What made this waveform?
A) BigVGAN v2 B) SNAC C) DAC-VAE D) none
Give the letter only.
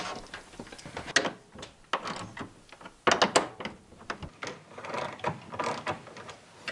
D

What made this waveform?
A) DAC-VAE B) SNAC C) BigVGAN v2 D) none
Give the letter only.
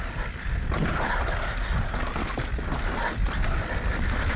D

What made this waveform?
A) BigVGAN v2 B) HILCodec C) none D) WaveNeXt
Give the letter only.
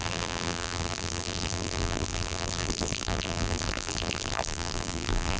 A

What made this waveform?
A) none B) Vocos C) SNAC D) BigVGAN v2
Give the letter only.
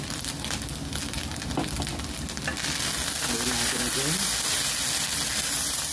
A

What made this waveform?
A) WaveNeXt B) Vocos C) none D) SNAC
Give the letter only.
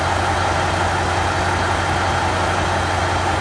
C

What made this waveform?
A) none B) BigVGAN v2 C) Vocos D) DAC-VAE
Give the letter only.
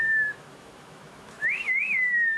D